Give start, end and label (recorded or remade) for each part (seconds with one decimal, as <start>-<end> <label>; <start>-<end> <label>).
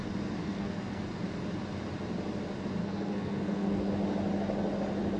0.0-0.4 recorded; 0.4-1.0 remade; 1.0-2.8 recorded; 2.8-3.9 remade; 3.9-5.2 recorded